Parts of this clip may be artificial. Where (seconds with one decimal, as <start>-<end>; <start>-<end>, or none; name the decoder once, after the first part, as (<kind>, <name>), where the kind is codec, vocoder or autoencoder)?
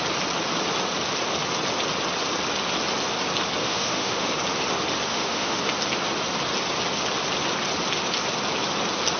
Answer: 3.6-4.3 (autoencoder, DAC-VAE); 5.1-5.6